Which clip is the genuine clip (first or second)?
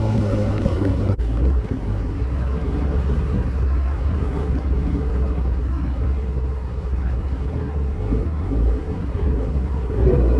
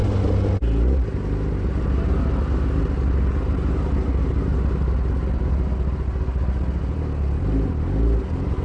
second